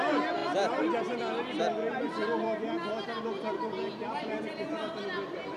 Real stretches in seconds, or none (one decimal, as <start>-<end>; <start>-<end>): 0.0-5.6

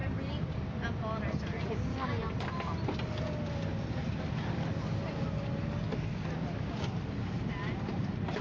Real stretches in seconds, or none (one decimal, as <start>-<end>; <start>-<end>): 0.0-8.4

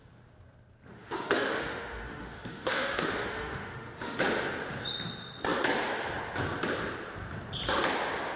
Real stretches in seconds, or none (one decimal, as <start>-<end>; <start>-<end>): 0.0-0.9; 4.2-8.4

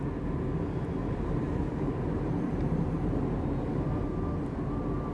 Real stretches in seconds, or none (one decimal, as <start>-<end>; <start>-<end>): 0.0-1.0; 4.1-5.1

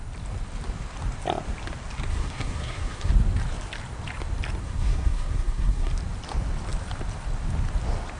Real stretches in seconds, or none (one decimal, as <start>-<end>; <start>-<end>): 0.0-2.1; 3.1-4.6; 5.9-8.2

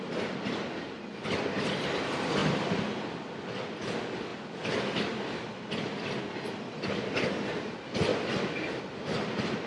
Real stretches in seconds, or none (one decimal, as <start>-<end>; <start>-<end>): 0.0-9.7

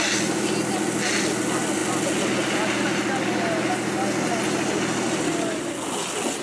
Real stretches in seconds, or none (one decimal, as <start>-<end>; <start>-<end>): 0.0-6.4